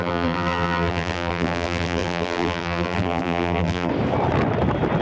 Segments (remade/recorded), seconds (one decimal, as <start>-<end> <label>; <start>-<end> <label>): 0.0-3.9 remade; 3.9-5.0 recorded